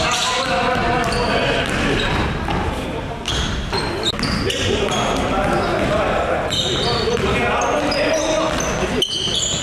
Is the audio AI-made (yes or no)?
no